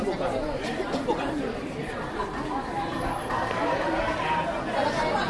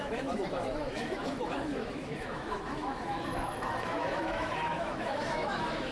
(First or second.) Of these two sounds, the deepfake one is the second